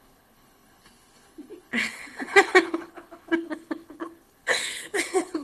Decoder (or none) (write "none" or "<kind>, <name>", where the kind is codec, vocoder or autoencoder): codec, HILCodec